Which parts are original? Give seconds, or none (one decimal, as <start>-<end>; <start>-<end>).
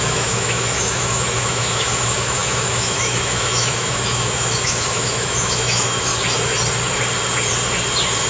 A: 6.1-8.3